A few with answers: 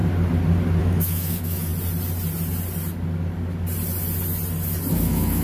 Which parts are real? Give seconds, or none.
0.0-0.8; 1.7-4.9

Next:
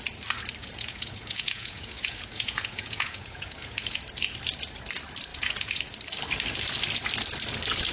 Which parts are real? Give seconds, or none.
0.0-0.6; 4.0-5.3; 5.8-7.9

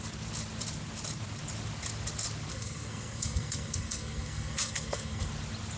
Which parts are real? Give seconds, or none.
0.0-2.5; 5.3-5.8

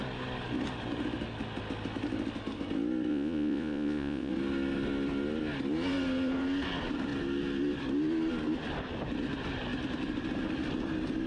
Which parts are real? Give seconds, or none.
0.0-3.1; 4.3-11.3

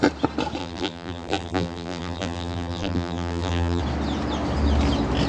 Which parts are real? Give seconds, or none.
0.0-0.6; 3.8-5.3

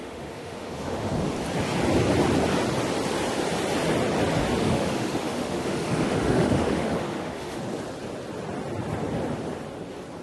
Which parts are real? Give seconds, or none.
1.1-4.6; 7.6-10.2